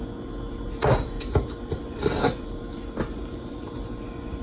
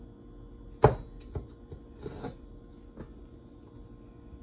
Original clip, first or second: second